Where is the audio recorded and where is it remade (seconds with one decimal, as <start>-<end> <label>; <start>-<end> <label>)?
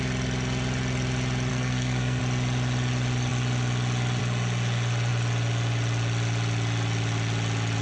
0.0-1.5 recorded; 1.5-2.2 remade; 2.2-7.8 recorded